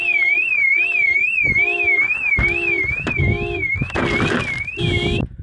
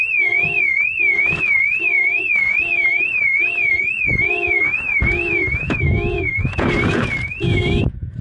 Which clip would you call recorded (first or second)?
first